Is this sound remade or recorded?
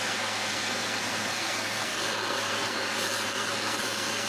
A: remade